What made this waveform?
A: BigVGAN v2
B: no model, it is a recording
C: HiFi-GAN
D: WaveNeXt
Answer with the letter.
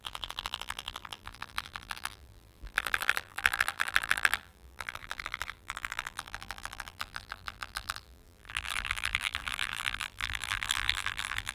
A